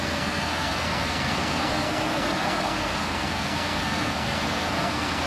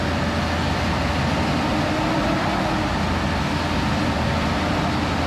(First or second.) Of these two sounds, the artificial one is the first